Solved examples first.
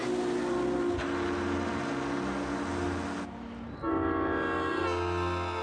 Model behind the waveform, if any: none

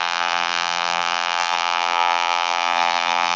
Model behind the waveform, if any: vocoder, BigVGAN v2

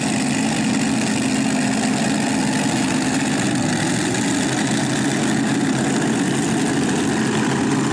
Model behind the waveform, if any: none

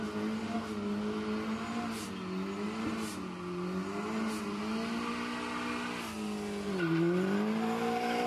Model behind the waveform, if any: none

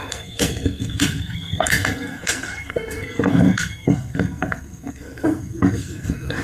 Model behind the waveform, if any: codec, SNAC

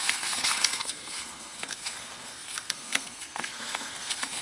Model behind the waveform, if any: codec, SNAC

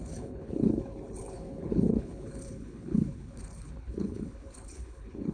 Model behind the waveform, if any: codec, HILCodec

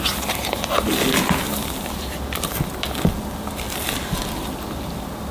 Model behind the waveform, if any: none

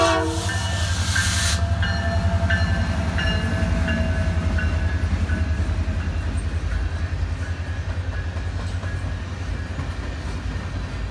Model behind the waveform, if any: none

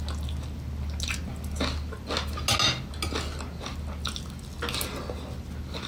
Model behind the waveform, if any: none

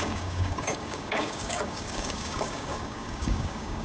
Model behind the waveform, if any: codec, DAC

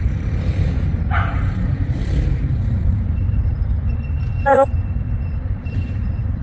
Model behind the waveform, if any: vocoder, BigVGAN v2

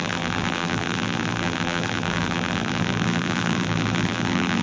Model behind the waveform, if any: vocoder, BigVGAN v2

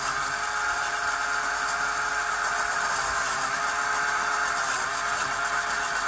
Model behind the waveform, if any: none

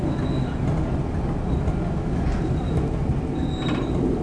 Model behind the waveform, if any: none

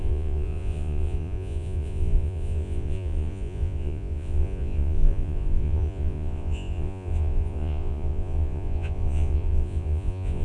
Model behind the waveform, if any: vocoder, Vocos